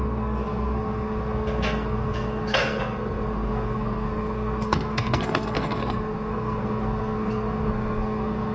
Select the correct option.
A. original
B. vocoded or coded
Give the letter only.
B